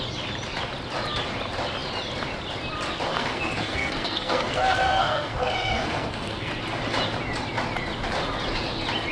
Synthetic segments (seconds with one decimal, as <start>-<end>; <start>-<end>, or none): 3.1-6.5